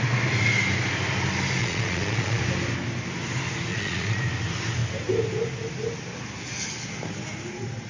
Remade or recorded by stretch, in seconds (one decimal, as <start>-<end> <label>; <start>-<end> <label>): 0.0-1.6 recorded; 1.6-2.4 remade; 2.4-3.7 recorded; 3.7-4.2 remade; 4.2-7.9 recorded